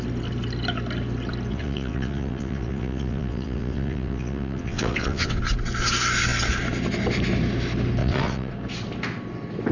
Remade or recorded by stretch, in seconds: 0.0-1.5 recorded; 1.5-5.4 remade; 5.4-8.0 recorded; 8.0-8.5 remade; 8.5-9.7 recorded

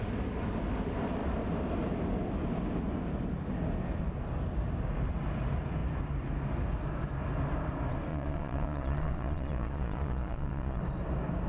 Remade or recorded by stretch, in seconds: 0.0-8.1 recorded; 8.1-10.8 remade; 10.8-11.5 recorded